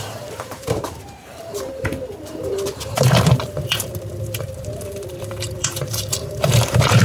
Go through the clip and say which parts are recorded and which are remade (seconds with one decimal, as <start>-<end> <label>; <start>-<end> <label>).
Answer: 0.0-7.0 remade